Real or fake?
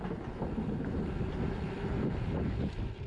real